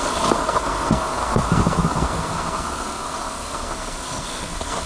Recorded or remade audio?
remade